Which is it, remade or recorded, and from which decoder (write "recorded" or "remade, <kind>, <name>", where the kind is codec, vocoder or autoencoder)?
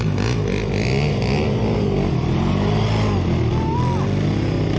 recorded